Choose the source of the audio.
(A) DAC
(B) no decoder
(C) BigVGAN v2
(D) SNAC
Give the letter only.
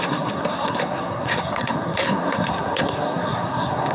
D